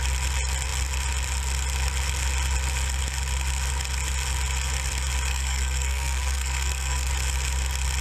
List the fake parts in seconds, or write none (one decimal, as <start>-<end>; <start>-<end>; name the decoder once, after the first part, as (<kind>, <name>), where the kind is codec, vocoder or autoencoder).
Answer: 5.3-7.1 (codec, SNAC)